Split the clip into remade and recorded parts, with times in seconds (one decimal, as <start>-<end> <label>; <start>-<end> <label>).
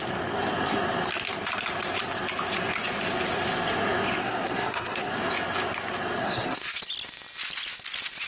0.0-4.2 recorded; 4.2-5.1 remade; 5.1-6.2 recorded; 6.2-6.8 remade; 6.8-8.3 recorded